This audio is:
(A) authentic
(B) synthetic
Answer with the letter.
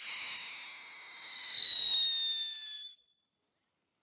A